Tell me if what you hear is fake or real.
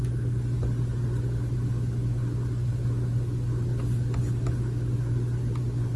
real